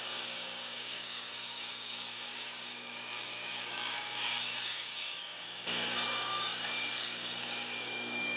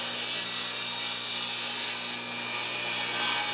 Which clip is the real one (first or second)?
second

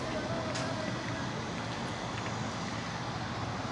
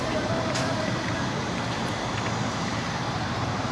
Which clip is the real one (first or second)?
first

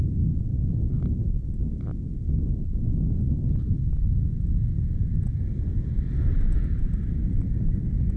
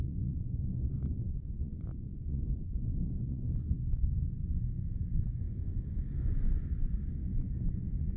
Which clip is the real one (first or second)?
first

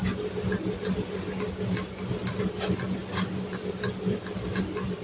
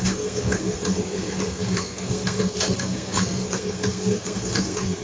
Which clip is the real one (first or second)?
first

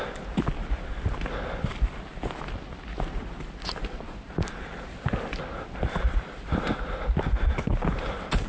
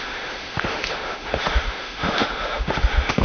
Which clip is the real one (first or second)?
first